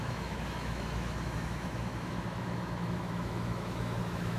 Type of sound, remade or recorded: remade